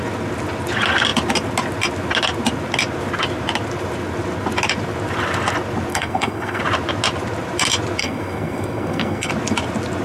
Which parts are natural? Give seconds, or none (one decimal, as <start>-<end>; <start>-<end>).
0.0-5.9; 6.6-8.0; 9.3-10.0